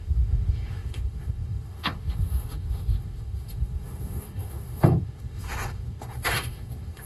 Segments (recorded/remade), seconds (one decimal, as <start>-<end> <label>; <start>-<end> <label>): 0.0-7.1 remade